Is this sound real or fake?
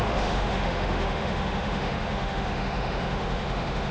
fake